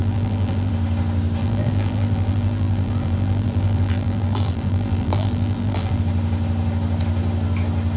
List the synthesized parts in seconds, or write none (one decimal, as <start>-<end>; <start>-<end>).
0.0-0.7; 1.4-6.0